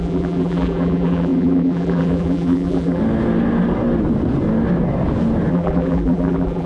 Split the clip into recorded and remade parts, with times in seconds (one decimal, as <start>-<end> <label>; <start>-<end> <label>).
0.0-3.0 remade; 3.0-5.5 recorded; 5.5-6.7 remade